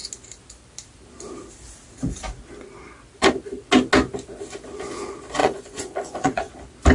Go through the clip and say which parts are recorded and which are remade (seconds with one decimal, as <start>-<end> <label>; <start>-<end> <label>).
0.0-5.4 recorded; 5.4-6.5 remade; 6.5-6.9 recorded